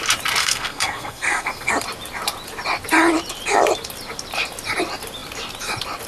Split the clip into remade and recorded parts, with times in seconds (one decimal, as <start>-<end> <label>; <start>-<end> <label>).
0.0-0.4 recorded; 0.4-1.7 remade; 1.7-6.1 recorded